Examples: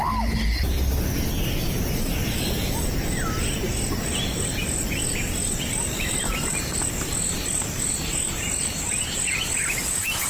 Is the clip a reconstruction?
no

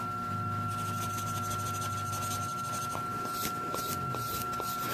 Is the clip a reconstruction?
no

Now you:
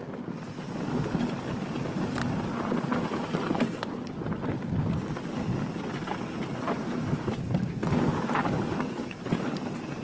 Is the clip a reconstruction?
no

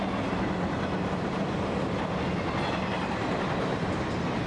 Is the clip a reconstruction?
no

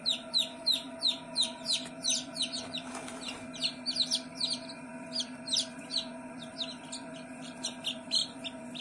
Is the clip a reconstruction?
yes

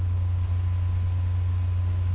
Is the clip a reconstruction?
no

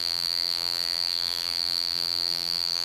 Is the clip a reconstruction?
yes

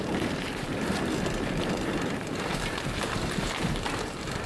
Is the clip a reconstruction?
yes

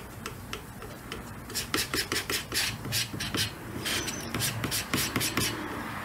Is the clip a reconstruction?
yes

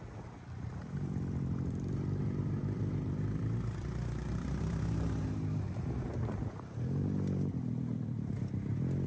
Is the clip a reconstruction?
yes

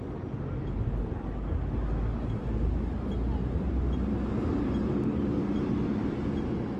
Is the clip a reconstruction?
no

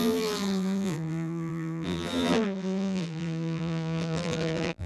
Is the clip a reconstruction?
yes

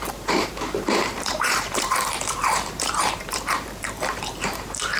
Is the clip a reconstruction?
yes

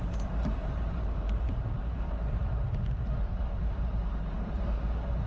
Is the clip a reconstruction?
yes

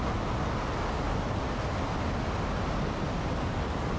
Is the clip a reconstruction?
no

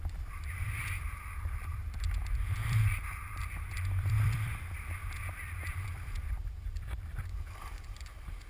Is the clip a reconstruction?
yes